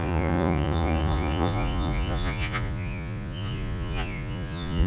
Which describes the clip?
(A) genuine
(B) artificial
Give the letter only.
B